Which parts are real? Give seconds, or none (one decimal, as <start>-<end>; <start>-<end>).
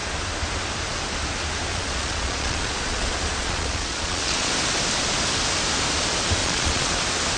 0.0-1.7; 4.5-6.4; 6.9-7.4